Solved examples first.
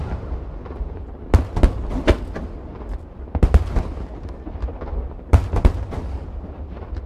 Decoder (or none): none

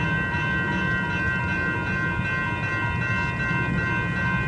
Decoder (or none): none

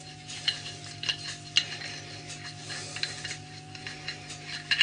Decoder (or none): none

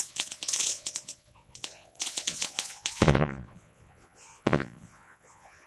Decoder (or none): vocoder, Vocos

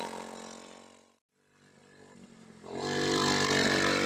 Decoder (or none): none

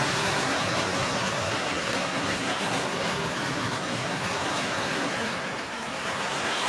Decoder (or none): codec, SNAC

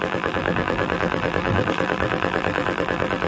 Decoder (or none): vocoder, BigVGAN v2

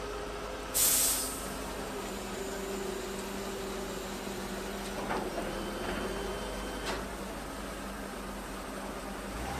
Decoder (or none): none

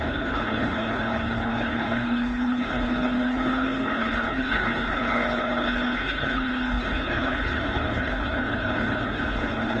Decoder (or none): codec, HILCodec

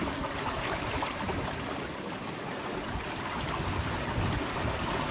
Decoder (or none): none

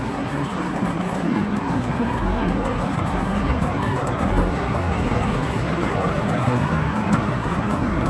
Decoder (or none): codec, SNAC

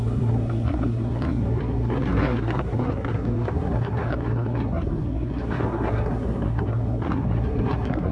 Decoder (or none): codec, SNAC